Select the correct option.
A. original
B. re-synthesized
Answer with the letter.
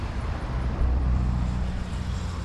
B